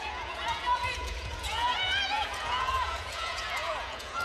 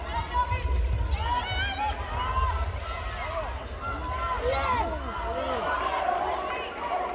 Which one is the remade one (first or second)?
first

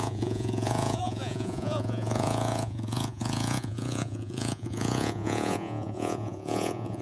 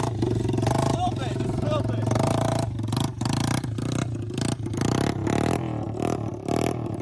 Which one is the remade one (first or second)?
first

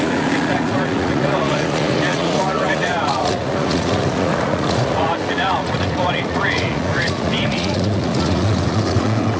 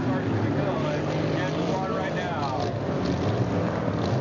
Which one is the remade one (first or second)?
first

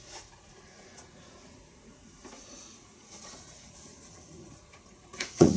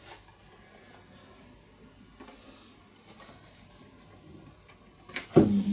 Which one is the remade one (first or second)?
first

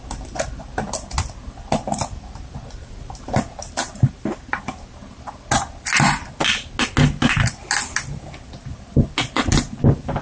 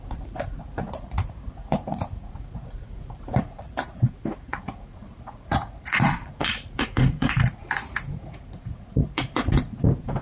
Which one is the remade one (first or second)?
second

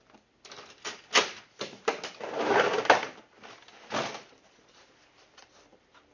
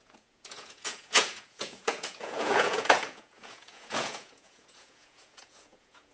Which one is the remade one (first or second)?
second